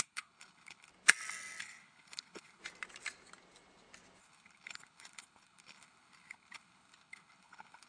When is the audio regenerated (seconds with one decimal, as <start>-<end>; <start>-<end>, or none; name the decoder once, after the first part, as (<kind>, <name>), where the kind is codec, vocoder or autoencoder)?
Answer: 0.0-0.9 (codec, HILCodec); 1.6-2.6; 4.2-7.9